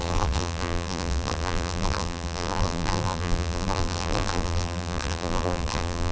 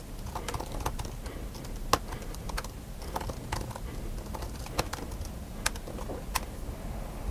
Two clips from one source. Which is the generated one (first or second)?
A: first